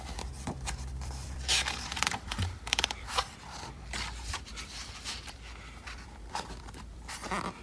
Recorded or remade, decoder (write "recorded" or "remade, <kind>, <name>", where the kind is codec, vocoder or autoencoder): remade, vocoder, BigVGAN v2